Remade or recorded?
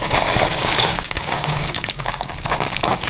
remade